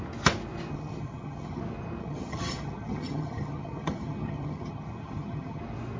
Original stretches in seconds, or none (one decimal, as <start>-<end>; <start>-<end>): 0.0-0.7; 1.6-2.0; 5.6-6.0